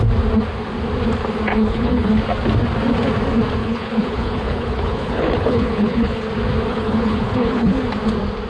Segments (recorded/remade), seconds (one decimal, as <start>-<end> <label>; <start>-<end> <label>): 0.0-1.5 recorded; 1.5-2.1 remade; 2.1-3.6 recorded; 3.6-6.3 remade; 6.3-6.7 recorded; 6.7-7.8 remade; 7.8-8.5 recorded